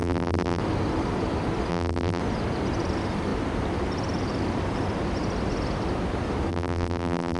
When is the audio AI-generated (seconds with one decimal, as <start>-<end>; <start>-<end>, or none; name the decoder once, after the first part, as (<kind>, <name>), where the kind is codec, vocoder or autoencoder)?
0.0-0.6 (vocoder, BigVGAN v2); 1.7-2.2; 6.5-7.4